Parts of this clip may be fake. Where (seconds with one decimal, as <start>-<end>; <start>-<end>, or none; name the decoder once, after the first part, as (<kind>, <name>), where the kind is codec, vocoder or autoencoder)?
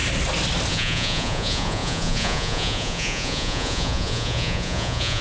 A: 0.7-5.2 (vocoder, Vocos)